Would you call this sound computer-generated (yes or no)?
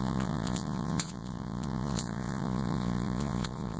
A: yes